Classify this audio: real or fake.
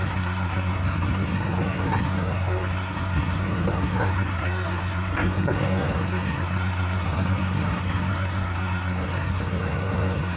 fake